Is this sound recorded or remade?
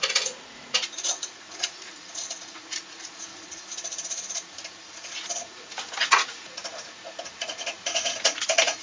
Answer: remade